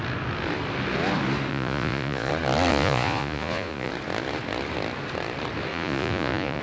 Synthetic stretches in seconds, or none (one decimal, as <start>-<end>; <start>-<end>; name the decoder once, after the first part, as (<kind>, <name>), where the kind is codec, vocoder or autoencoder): 1.5-2.3 (vocoder, Vocos); 2.7-3.9; 5.7-6.6